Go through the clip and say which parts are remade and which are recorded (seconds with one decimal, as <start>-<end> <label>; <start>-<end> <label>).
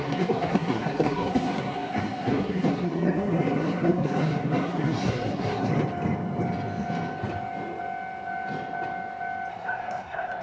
0.0-5.7 remade; 5.7-9.5 recorded; 9.5-10.4 remade